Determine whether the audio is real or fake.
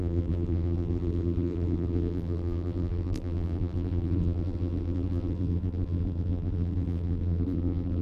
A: fake